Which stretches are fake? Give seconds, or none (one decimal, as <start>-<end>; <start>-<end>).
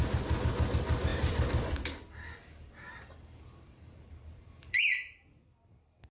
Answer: 1.1-4.8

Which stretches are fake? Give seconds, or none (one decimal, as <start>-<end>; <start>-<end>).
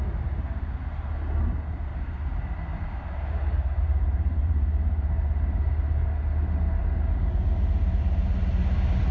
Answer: 1.9-5.1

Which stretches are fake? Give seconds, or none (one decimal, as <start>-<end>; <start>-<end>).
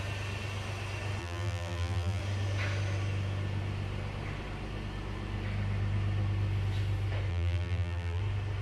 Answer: 1.2-2.2; 7.3-8.2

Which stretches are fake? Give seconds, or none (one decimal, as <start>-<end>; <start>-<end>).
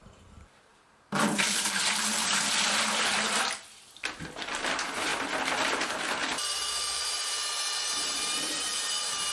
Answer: 0.0-2.3; 6.2-8.9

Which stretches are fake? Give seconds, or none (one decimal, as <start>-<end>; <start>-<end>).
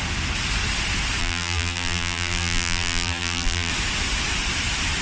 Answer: 1.2-3.7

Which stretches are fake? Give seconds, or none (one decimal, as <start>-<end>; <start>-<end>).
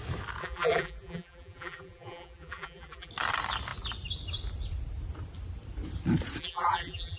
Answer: 0.4-3.1; 6.4-7.2